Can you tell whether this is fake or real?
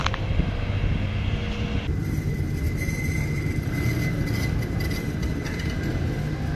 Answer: real